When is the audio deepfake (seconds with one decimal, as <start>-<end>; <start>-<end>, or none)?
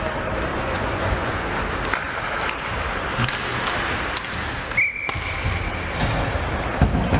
0.5-1.5